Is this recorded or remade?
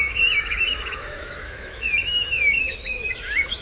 remade